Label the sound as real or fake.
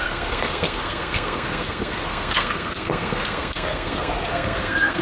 fake